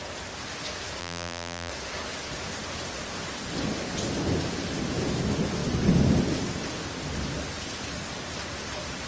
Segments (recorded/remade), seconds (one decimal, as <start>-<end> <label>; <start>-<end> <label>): 0.0-1.0 recorded; 1.0-1.7 remade; 1.7-9.1 recorded